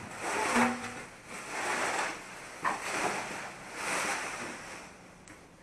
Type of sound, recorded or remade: recorded